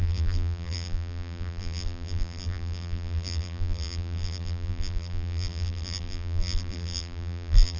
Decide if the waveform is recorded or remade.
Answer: remade